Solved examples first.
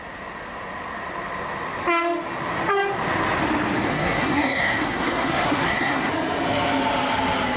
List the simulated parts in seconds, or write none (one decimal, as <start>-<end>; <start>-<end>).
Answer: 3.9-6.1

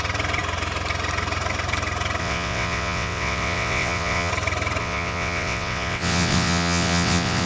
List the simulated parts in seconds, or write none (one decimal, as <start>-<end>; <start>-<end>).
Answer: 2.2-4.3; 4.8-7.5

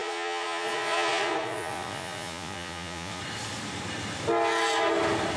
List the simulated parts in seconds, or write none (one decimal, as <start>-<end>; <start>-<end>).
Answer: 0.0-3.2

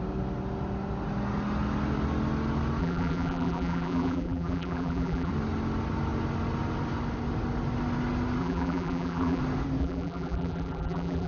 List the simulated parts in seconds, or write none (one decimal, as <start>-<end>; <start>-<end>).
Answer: 2.8-5.3; 8.4-9.4; 9.8-11.3